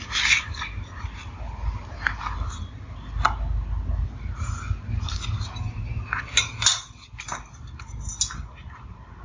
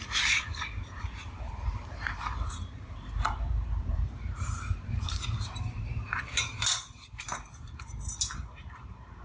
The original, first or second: first